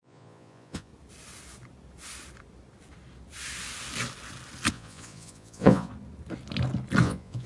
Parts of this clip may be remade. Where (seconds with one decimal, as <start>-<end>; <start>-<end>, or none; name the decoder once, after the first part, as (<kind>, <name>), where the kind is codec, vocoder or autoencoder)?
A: 0.0-0.9 (vocoder, Vocos); 4.7-5.9; 7.0-7.5